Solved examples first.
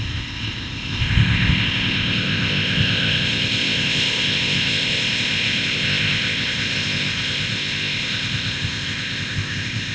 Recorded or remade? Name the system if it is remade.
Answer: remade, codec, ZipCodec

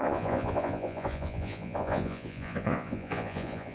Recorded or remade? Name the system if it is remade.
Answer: remade, vocoder, Vocos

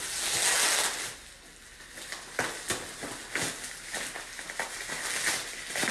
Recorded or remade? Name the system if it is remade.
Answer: recorded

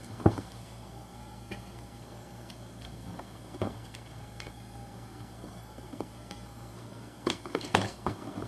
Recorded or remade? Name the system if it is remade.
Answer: remade, codec, SNAC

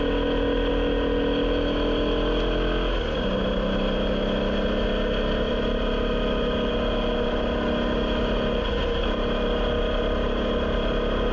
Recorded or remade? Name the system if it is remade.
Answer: recorded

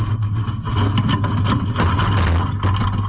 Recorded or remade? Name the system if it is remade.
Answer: recorded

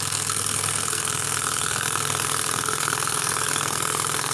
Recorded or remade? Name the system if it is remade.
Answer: remade, codec, SNAC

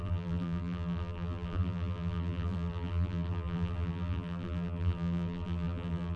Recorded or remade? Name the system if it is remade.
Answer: remade, vocoder, BigVGAN v2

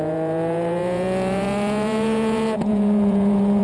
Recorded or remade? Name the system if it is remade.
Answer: remade, vocoder, Vocos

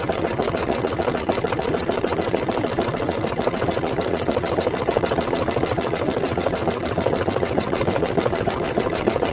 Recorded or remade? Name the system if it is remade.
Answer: remade, vocoder, WaveNeXt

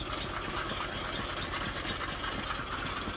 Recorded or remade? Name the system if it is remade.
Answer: recorded